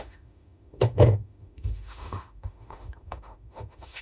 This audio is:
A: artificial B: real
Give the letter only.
A